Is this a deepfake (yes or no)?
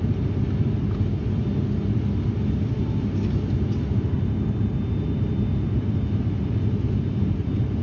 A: no